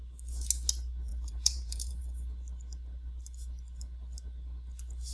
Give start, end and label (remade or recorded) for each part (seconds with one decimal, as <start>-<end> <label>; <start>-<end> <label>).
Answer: 0.0-1.1 recorded; 1.1-2.0 remade; 2.0-5.1 recorded